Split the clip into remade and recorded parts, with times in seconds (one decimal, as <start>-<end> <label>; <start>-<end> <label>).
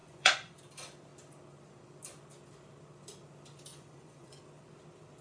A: 0.0-0.6 remade; 0.6-3.7 recorded; 3.7-4.4 remade; 4.4-5.2 recorded